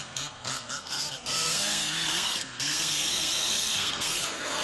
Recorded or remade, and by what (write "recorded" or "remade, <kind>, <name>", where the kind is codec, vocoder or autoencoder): remade, codec, SNAC